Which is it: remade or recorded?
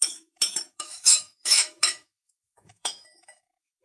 remade